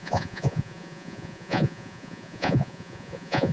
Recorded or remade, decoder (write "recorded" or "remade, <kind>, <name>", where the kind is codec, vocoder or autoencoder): remade, vocoder, Vocos